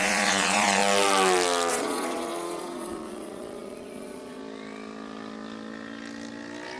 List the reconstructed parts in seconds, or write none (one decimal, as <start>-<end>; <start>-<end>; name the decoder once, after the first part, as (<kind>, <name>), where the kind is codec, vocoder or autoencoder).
0.0-0.8 (vocoder, Vocos); 1.7-4.4